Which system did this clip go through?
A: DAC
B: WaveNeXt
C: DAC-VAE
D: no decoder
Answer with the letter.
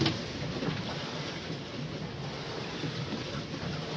D